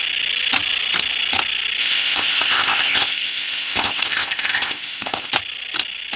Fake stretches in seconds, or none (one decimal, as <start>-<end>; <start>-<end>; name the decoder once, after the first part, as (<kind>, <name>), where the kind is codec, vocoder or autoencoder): 1.8-5.3 (codec, ZipCodec)